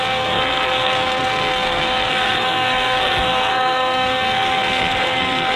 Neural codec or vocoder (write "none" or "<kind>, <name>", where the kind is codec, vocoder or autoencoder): codec, SNAC